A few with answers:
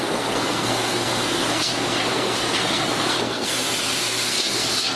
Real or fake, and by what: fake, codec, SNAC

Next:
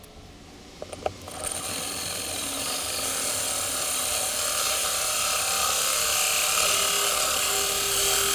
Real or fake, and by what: real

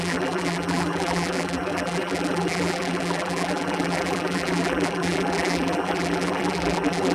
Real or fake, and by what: fake, vocoder, BigVGAN v2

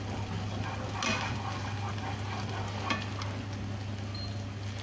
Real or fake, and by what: real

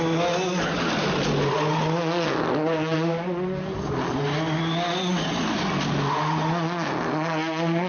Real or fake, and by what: real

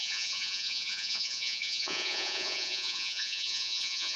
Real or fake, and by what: fake, vocoder, Vocos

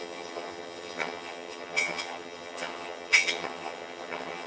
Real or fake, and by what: fake, vocoder, HiFi-GAN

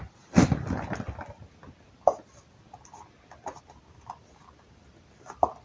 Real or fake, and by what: real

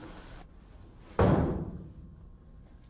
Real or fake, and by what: real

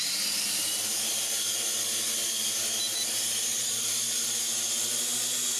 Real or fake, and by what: real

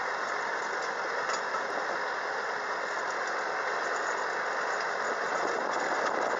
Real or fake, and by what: real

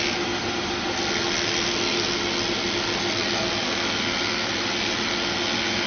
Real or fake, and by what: real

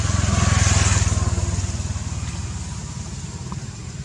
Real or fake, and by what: real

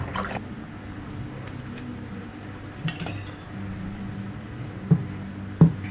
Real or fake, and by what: real